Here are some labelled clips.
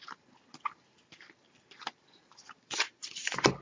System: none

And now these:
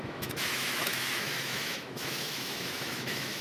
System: autoencoder, DAC-VAE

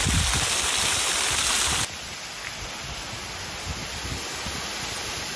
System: none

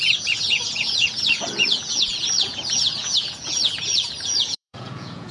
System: vocoder, Vocos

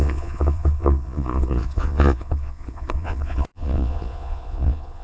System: vocoder, Vocos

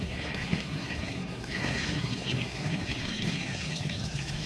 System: codec, SNAC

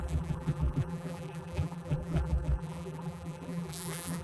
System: vocoder, BigVGAN v2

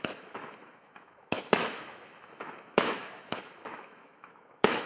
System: autoencoder, DAC-VAE